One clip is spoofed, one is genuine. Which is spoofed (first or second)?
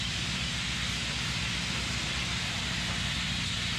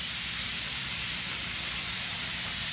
second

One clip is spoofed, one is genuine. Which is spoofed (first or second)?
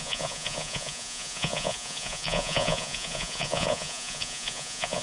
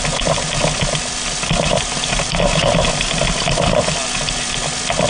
first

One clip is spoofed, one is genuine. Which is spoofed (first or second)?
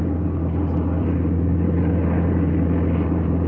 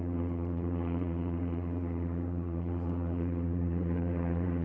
second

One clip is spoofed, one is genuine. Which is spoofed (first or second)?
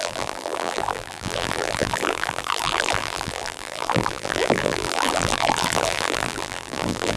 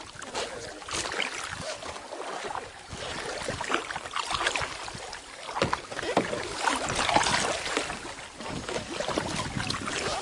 first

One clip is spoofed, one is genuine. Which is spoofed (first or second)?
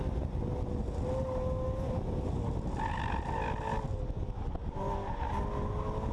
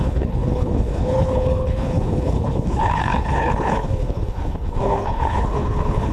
second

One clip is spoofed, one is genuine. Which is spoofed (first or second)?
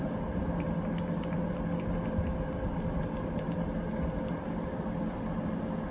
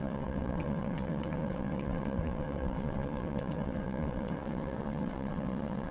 second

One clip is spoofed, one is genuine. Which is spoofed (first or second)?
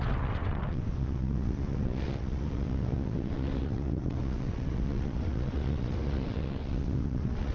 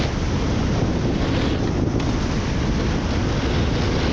first